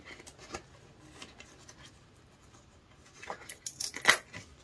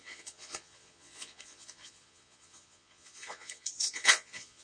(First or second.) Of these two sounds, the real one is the first